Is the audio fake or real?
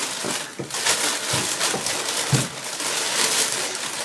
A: real